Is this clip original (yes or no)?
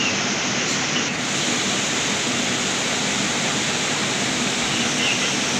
yes